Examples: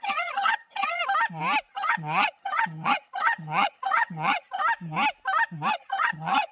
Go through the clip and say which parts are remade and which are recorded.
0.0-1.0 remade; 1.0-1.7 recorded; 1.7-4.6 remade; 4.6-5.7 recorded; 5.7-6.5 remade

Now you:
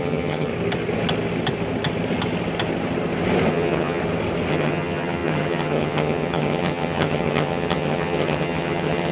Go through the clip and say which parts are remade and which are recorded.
0.0-0.5 remade; 0.5-3.5 recorded; 3.5-4.0 remade; 4.0-4.5 recorded; 4.5-9.1 remade

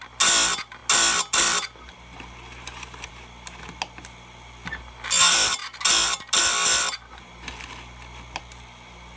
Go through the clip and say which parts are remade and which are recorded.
0.0-9.2 recorded

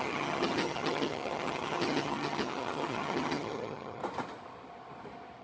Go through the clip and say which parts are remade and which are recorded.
0.0-4.0 remade; 4.0-5.4 recorded

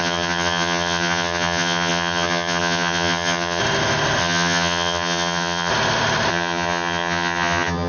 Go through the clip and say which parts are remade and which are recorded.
0.0-3.6 remade; 3.6-4.2 recorded; 4.2-5.7 remade; 5.7-6.3 recorded; 6.3-7.9 remade

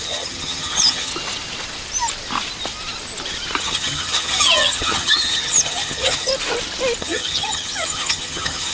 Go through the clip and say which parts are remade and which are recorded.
0.0-1.1 remade; 1.1-3.6 recorded; 3.6-6.3 remade; 6.3-7.0 recorded; 7.0-8.7 remade